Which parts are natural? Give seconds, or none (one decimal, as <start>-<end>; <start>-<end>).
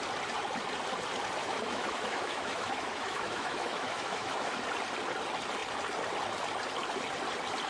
0.0-1.4; 4.6-7.7